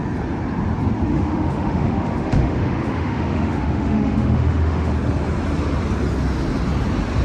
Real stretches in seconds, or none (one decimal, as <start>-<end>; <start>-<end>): 0.0-1.1; 4.9-7.2